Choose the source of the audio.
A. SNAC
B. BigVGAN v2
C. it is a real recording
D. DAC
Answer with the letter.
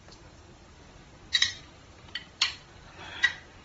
B